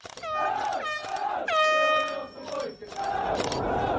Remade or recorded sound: recorded